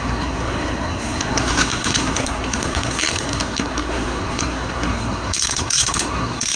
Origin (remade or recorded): remade